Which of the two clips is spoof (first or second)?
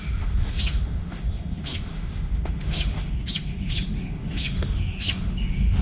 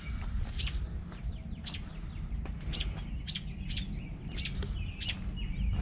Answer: first